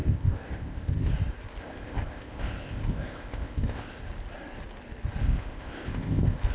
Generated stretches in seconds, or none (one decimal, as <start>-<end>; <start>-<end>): 0.0-1.1; 1.6-4.0; 5.2-6.5